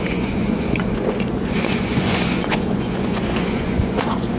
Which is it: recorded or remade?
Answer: remade